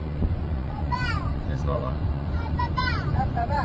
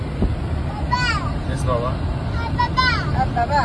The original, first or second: second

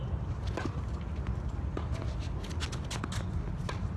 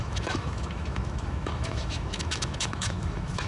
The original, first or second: first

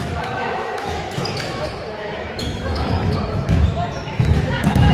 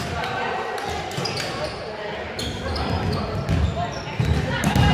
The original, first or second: second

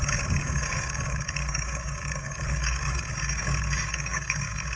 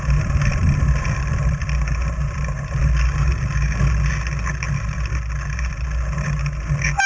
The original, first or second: second